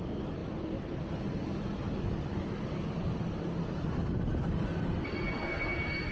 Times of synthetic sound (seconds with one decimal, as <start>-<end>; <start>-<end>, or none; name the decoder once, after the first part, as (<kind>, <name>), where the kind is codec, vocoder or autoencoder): none